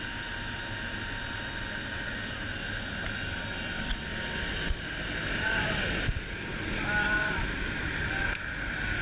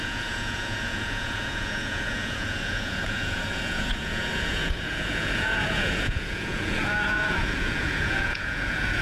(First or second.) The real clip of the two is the first